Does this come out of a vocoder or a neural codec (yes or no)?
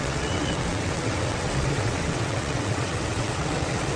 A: yes